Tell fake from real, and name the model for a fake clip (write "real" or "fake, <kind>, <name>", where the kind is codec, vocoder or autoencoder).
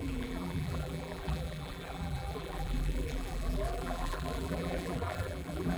fake, vocoder, BigVGAN v2